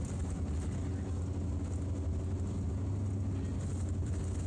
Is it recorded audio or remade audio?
recorded